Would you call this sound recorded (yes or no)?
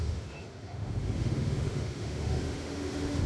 no